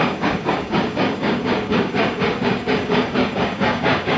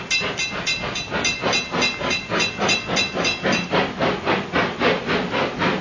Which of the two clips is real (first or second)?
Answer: second